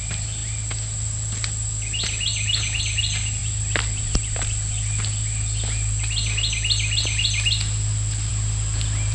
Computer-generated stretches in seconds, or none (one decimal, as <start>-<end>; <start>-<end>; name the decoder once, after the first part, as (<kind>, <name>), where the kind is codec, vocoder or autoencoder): none